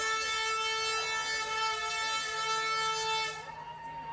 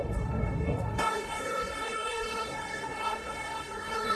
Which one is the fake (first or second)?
second